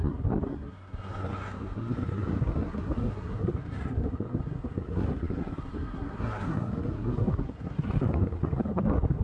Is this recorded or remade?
remade